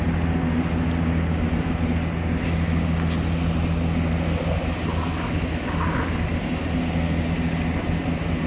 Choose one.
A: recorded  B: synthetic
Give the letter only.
A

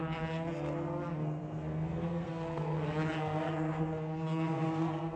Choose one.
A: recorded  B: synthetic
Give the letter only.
B